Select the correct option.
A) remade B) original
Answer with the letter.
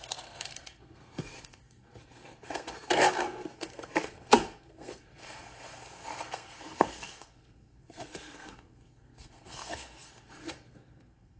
A